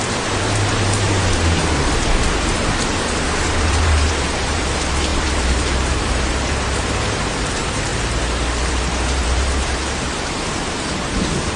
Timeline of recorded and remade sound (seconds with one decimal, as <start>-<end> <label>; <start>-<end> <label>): 0.0-7.9 remade; 7.9-8.7 recorded; 8.7-11.6 remade